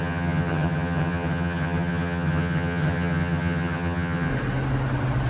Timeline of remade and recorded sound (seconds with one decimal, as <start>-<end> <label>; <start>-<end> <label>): 0.0-4.3 remade; 4.3-5.3 recorded